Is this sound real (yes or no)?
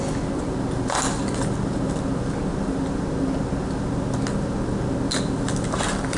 yes